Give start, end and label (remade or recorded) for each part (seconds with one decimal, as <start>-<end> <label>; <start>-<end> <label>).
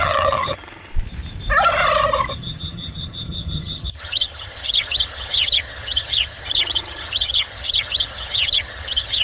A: 0.0-0.9 remade; 0.9-2.3 recorded; 2.3-9.2 remade